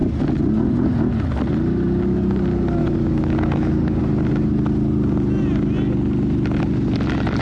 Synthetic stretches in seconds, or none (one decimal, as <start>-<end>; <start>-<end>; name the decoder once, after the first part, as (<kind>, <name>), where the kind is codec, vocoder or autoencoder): 2.8-4.0 (codec, DAC)

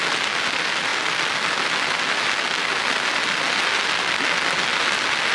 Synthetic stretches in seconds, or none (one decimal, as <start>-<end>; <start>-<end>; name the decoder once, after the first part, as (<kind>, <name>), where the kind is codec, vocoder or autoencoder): none

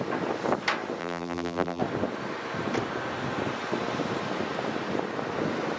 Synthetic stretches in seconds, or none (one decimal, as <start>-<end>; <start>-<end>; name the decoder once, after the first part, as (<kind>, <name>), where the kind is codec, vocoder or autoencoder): 1.0-1.8 (vocoder, BigVGAN v2)